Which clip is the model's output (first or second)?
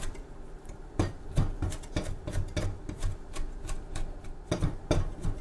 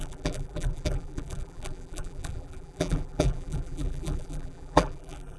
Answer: second